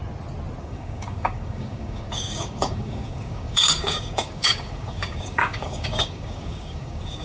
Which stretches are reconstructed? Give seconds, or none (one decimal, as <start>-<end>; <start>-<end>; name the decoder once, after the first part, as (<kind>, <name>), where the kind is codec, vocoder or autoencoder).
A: 0.6-7.2 (codec, DAC)